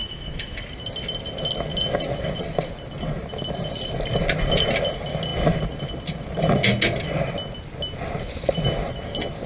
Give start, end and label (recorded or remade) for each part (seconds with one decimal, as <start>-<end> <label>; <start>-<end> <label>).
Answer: 0.0-0.6 remade; 0.6-9.5 recorded